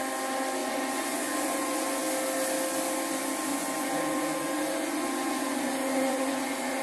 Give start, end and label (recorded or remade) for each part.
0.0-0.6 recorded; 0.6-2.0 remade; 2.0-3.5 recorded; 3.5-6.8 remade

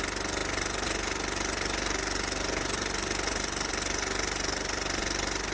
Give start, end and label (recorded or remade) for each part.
0.0-5.5 recorded